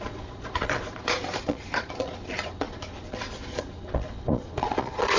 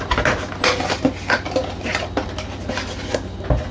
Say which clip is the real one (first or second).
second